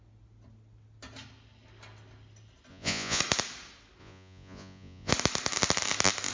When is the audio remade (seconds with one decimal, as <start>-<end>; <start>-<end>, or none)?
2.7-3.2; 4.0-5.1